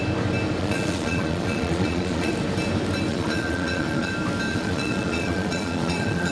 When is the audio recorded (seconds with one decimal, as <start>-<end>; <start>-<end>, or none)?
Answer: 0.0-0.6; 2.3-3.1; 4.1-4.5